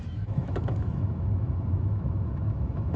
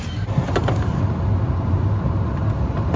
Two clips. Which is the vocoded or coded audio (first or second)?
first